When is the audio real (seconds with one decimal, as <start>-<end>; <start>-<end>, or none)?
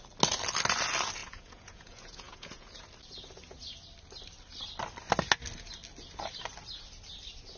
0.0-1.2; 2.8-7.6